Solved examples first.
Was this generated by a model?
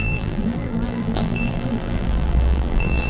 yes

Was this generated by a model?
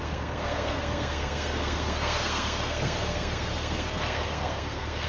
yes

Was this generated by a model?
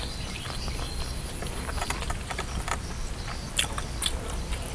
no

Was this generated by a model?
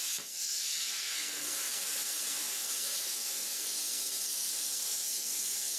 yes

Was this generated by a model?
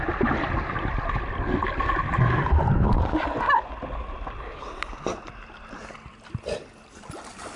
no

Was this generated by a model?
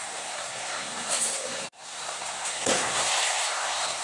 yes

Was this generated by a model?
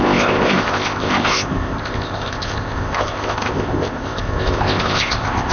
yes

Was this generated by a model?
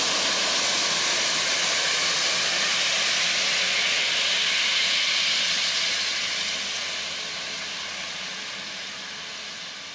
no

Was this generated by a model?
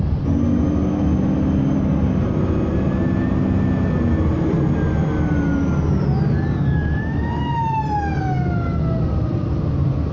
no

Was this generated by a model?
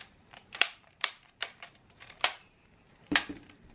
yes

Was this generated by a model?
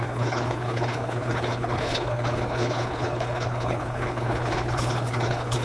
yes